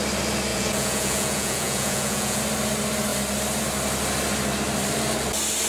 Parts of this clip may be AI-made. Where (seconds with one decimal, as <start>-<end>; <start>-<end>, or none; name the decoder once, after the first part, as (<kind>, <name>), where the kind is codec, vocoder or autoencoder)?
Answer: 0.5-2.4 (vocoder, Vocos)